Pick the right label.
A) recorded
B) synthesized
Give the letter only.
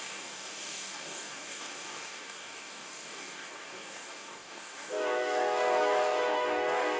B